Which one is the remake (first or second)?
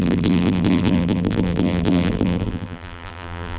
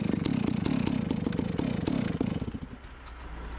first